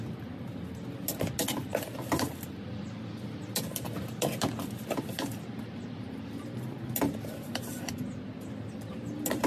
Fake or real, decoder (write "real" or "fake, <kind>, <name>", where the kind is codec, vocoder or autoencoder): real